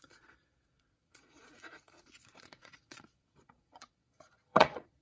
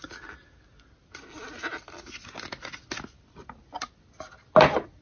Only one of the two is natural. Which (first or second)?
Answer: second